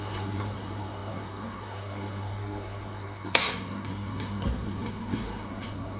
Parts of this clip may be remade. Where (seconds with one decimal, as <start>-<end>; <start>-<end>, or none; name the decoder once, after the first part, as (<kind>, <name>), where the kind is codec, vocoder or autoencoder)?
0.0-6.0 (codec, SNAC)